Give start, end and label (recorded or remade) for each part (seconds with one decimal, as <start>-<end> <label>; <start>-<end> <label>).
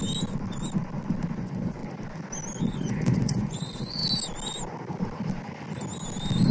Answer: 0.0-1.3 recorded; 1.3-1.8 remade; 1.8-2.7 recorded; 2.7-4.0 remade; 4.0-6.5 recorded